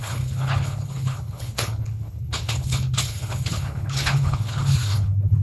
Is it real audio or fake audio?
fake